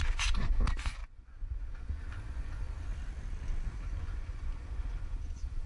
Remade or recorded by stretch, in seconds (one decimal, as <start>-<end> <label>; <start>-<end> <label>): 0.0-2.9 remade; 2.9-3.8 recorded; 3.8-5.7 remade